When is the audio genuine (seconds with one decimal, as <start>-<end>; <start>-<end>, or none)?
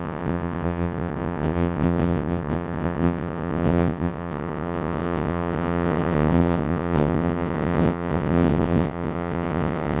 none